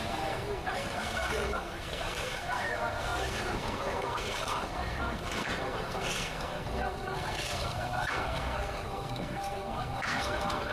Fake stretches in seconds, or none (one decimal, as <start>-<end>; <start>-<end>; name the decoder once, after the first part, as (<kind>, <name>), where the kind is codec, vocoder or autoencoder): 0.0-10.7 (codec, SNAC)